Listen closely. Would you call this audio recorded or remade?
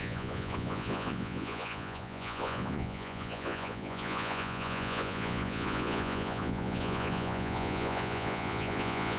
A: remade